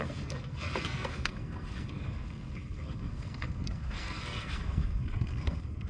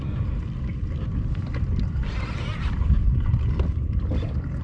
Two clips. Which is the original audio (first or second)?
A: second